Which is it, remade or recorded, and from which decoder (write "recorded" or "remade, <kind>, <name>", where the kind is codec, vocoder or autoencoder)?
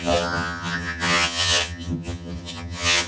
remade, vocoder, HiFi-GAN